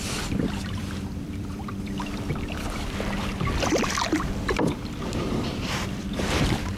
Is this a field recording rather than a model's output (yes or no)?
no